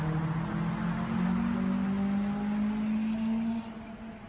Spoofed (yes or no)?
no